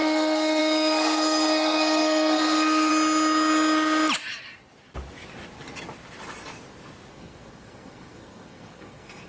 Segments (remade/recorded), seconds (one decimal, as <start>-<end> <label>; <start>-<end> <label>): 0.0-2.9 remade; 2.9-7.1 recorded; 7.1-9.3 remade